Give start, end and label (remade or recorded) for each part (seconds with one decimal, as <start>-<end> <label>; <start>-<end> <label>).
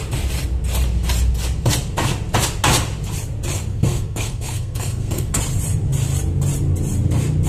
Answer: 0.0-3.7 recorded; 3.7-5.4 remade; 5.4-7.5 recorded